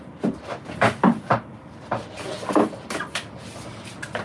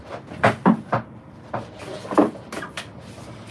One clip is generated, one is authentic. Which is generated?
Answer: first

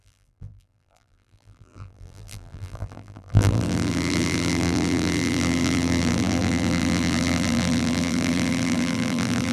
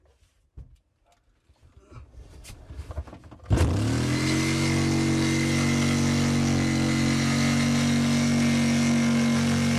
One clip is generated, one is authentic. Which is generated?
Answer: first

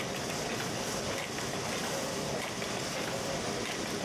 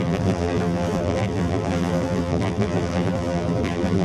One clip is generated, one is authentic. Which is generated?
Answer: second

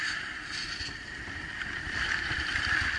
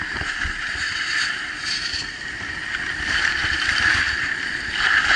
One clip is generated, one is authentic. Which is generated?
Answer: first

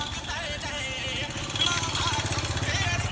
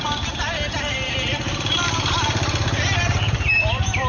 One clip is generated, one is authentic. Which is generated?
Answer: second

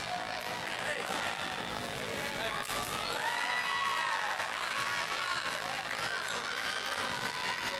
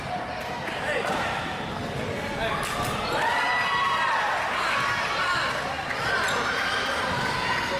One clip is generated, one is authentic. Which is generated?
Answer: first